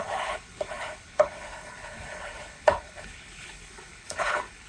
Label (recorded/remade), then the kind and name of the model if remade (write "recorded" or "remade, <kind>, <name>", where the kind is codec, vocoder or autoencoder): remade, codec, HILCodec